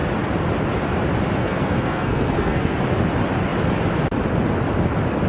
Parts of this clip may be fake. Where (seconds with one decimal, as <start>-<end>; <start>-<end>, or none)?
1.4-2.8